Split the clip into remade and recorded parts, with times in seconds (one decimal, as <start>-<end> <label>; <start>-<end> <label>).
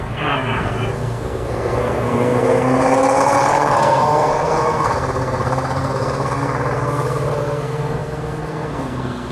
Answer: 0.0-9.3 remade